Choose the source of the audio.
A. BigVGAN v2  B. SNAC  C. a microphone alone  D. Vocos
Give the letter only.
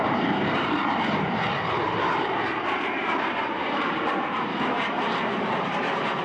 A